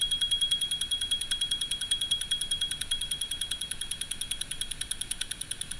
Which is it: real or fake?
real